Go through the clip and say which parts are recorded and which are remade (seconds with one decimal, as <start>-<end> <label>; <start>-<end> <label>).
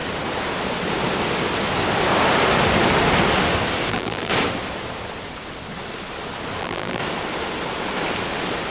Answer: 0.0-3.9 recorded; 3.9-4.3 remade; 4.3-6.6 recorded; 6.6-7.0 remade; 7.0-8.7 recorded